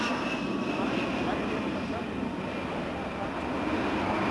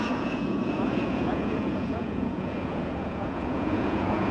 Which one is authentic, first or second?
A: first